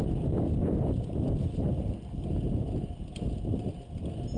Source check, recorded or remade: recorded